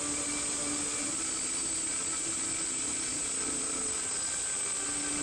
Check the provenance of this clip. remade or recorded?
recorded